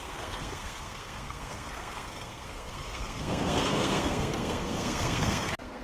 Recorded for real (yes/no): no